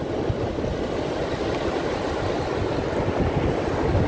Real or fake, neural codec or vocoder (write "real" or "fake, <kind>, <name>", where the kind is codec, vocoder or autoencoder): real